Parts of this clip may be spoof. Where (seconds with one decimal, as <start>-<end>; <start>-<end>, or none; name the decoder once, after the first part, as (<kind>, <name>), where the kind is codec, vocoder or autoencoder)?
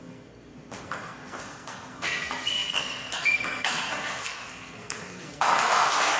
0.0-6.2 (codec, SNAC)